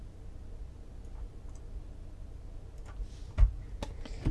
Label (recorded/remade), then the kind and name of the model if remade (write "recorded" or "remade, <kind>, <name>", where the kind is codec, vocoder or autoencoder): recorded